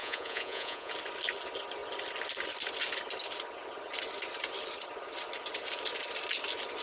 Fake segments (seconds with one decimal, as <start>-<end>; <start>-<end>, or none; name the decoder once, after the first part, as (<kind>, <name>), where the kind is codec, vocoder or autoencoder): 0.0-0.9 (vocoder, Vocos)